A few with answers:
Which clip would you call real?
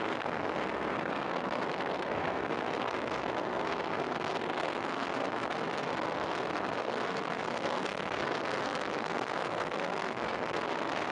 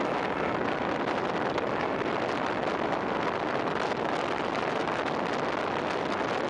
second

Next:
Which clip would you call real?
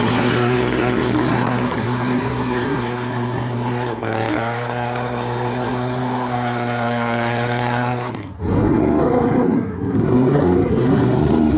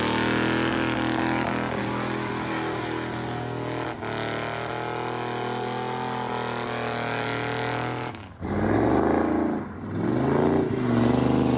second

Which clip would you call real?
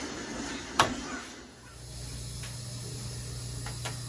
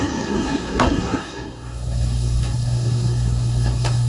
first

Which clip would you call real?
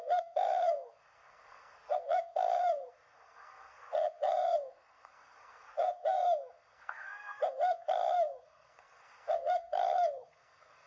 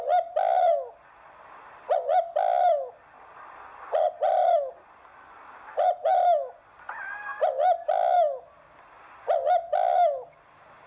second